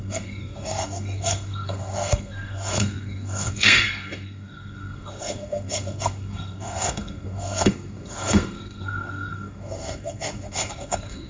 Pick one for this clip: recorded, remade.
remade